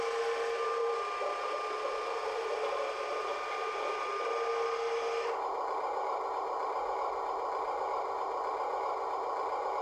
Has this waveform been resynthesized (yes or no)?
no